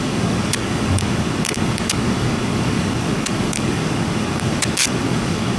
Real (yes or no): no